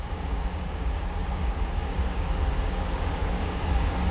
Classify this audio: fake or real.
fake